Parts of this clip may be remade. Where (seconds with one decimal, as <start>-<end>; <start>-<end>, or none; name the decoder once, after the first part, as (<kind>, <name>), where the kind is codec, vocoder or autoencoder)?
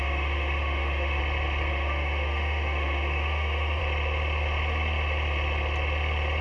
0.0-1.2 (autoencoder, DAC-VAE); 1.7-3.8